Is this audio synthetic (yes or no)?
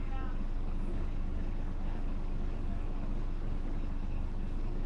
yes